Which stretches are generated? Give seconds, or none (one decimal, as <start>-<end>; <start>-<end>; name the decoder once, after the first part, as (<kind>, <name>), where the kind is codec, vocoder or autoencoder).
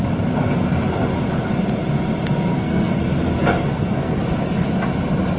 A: 2.5-3.0 (codec, SNAC); 3.4-4.2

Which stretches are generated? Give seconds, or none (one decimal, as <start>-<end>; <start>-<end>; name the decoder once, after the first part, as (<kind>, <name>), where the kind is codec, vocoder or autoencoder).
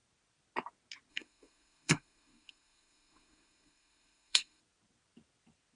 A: 1.1-4.6 (codec, SNAC)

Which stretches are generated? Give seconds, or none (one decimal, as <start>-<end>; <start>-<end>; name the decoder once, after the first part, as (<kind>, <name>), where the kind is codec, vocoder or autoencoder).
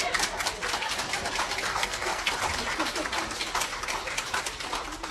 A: 1.7-2.2 (codec, SNAC)